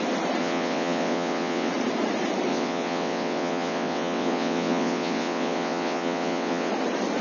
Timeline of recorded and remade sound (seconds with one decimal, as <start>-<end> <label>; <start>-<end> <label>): 0.0-0.4 recorded; 0.4-1.7 remade; 1.7-2.5 recorded; 2.5-6.7 remade; 6.7-7.2 recorded